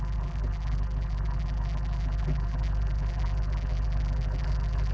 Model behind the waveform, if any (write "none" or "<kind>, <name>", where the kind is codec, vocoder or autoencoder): vocoder, BigVGAN v2